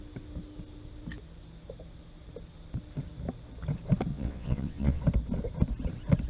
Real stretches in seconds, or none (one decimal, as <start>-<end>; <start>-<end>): 0.0-4.1; 5.0-6.3